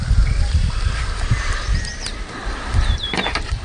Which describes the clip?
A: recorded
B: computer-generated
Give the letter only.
B